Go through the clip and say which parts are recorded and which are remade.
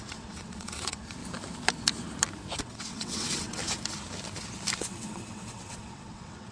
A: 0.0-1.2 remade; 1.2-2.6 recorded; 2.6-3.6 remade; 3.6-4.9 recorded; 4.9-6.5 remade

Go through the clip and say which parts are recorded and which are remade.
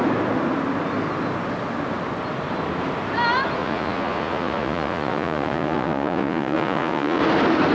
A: 0.0-3.6 recorded; 3.6-7.2 remade; 7.2-7.7 recorded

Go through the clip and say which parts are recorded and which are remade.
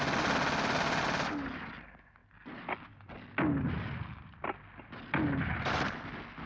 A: 0.0-6.5 recorded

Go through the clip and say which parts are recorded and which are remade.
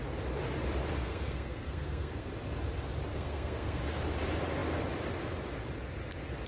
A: 0.0-0.9 recorded; 0.9-2.3 remade; 2.3-3.1 recorded; 3.1-3.8 remade; 3.8-6.5 recorded